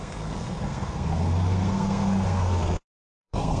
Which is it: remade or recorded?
remade